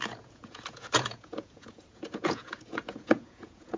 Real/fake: fake